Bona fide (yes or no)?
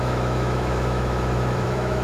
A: no